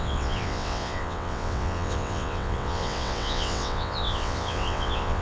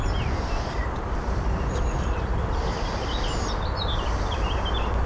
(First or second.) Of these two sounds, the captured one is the second